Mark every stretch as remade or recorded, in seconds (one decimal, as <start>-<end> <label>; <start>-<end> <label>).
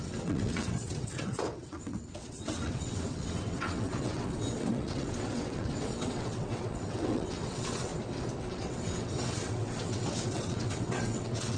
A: 0.0-7.9 remade; 7.9-8.4 recorded; 8.4-11.6 remade